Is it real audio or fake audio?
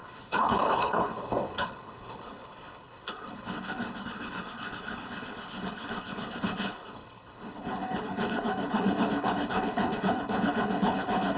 fake